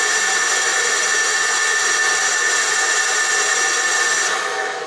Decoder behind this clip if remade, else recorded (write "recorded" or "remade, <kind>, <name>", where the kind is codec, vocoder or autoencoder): recorded